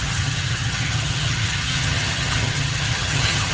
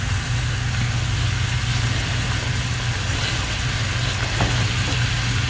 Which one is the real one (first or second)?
second